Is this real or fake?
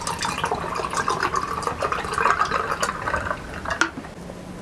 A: real